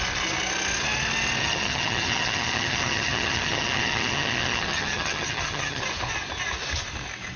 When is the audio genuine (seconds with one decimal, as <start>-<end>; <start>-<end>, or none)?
0.0-1.4; 5.8-7.4